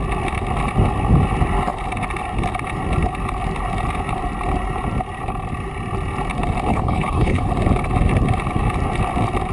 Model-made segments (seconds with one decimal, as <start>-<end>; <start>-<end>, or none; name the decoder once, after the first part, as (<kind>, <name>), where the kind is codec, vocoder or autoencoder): 6.7-7.5 (codec, HILCodec)